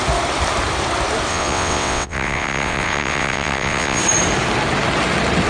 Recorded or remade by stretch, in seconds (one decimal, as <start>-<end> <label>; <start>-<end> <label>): 0.0-1.3 recorded; 1.3-4.0 remade; 4.0-5.5 recorded